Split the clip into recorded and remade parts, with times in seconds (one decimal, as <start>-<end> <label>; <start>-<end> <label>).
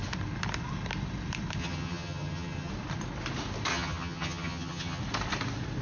0.0-1.6 recorded; 1.6-2.7 remade; 2.7-3.7 recorded; 3.7-5.0 remade; 5.0-5.8 recorded